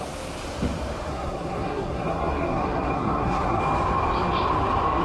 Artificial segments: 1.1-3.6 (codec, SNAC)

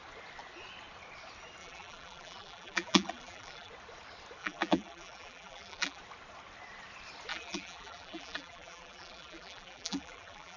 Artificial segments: 1.6-3.7 (vocoder, BigVGAN v2); 4.4-6.0; 7.3-10.6

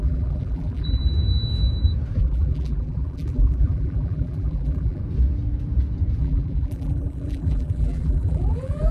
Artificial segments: 0.0-1.0 (vocoder, BigVGAN v2); 2.2-5.0; 6.2-8.9

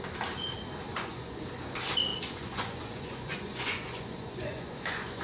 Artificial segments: 0.9-1.4 (vocoder, Vocos); 2.1-5.2

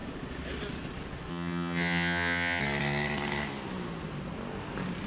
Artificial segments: 1.3-2.6 (vocoder, HiFi-GAN)

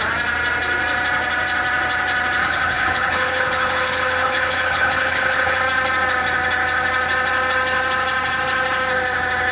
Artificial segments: 2.4-5.6 (codec, HILCodec)

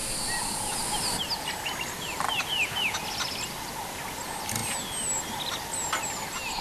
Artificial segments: none

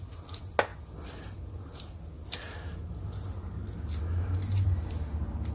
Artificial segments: none